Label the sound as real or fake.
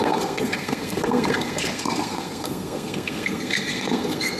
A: fake